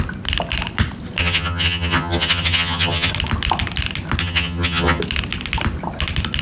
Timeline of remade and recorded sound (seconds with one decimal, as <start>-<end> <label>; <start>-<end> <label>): 0.0-1.2 recorded; 1.2-3.1 remade; 3.1-4.2 recorded; 4.2-5.0 remade; 5.0-6.4 recorded

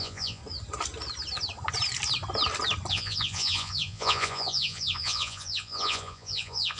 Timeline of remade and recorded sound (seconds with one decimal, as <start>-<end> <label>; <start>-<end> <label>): 0.0-0.4 remade; 0.4-2.9 recorded; 2.9-6.8 remade

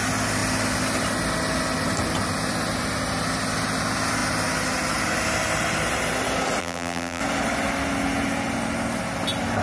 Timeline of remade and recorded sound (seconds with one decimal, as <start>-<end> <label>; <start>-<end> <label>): 0.0-6.6 recorded; 6.6-7.2 remade; 7.2-9.6 recorded